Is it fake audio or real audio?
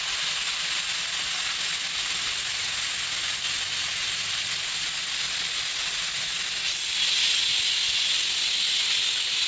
real